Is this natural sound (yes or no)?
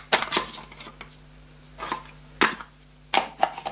yes